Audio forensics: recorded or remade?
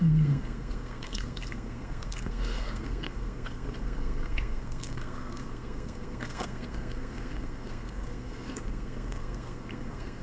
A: remade